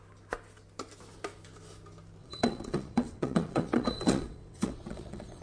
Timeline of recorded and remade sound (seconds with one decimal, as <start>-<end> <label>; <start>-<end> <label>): 0.0-2.2 recorded; 2.2-5.4 remade